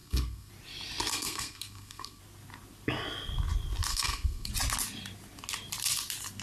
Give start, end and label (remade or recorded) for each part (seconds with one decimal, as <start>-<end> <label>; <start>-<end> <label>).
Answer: 0.0-0.5 remade; 0.5-1.1 recorded; 1.1-2.2 remade; 2.2-3.9 recorded; 3.9-4.5 remade; 4.5-6.4 recorded